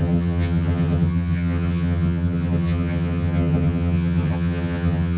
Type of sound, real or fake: fake